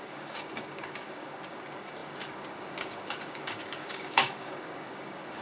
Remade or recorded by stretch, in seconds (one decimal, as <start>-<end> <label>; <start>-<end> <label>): 0.0-5.4 remade